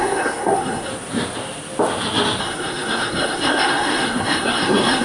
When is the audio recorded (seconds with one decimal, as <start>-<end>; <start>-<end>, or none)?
0.9-2.4